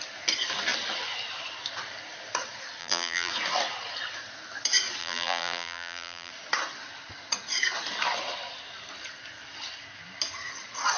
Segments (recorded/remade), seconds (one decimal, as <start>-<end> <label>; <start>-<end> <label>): 0.0-2.8 recorded; 2.8-3.3 remade; 3.3-5.0 recorded; 5.0-6.3 remade; 6.3-11.0 recorded